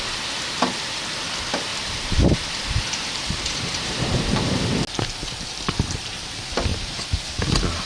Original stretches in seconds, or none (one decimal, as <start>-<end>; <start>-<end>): 0.0-1.7; 4.0-6.7; 7.4-7.9